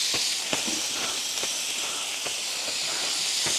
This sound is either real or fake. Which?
real